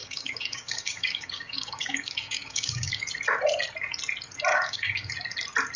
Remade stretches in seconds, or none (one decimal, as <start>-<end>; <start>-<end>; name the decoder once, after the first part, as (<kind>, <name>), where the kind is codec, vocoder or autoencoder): 0.0-3.0 (codec, DAC); 4.5-5.1